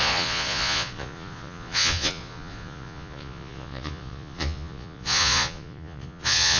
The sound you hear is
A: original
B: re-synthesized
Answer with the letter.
B